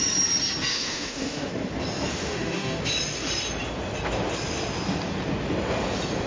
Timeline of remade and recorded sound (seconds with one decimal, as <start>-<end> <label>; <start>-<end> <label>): 0.0-0.7 recorded; 0.7-1.5 remade; 1.5-2.1 recorded; 2.1-2.8 remade; 2.8-6.3 recorded